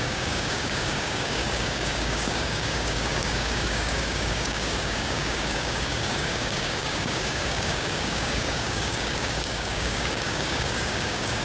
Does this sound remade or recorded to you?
remade